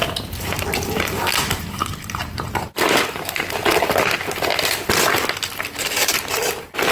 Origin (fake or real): real